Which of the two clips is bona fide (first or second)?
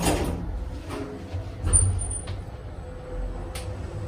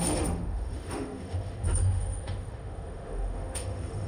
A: first